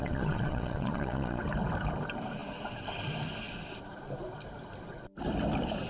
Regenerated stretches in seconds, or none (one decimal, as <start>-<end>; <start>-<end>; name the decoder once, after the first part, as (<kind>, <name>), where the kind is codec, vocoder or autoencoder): 0.0-1.4 (vocoder, Vocos)